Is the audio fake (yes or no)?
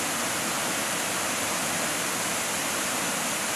no